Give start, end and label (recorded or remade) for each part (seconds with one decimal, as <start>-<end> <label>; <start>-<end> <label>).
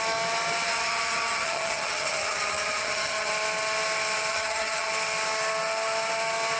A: 0.0-0.7 recorded; 0.7-3.3 remade; 3.3-4.3 recorded; 4.3-4.9 remade; 4.9-6.6 recorded